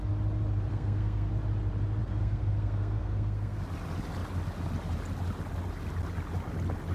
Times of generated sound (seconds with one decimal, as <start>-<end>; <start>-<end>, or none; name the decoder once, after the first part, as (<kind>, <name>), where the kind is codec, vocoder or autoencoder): 0.7-1.3 (codec, SNAC); 2.0-3.6